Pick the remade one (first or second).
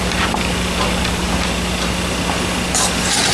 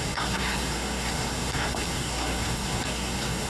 second